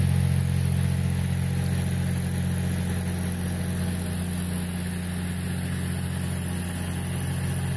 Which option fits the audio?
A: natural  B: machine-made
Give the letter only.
A